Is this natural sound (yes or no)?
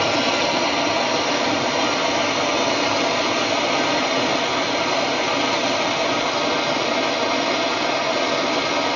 yes